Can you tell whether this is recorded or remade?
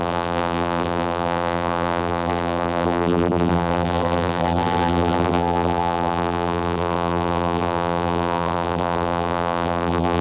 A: remade